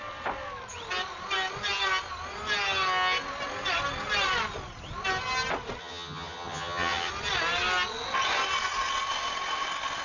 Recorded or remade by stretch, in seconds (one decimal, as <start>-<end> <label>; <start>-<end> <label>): 0.0-5.8 recorded; 5.8-7.1 remade; 7.1-10.0 recorded